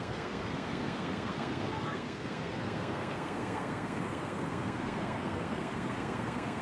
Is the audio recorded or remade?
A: remade